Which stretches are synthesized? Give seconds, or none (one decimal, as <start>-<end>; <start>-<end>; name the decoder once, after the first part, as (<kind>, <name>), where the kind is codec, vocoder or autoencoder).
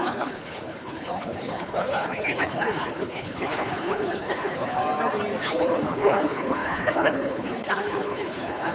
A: 0.0-4.8 (codec, HILCodec); 5.4-8.7